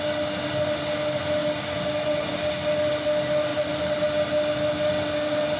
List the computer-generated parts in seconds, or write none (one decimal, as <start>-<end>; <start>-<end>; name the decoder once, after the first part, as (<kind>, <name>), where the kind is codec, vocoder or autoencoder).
none